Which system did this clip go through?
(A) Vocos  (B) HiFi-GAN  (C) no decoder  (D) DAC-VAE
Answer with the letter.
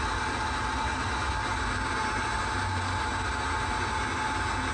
C